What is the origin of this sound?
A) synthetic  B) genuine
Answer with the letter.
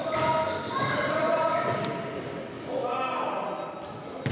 B